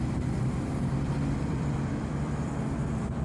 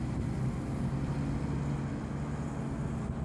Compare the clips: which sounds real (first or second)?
second